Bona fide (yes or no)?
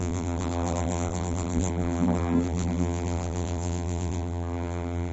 no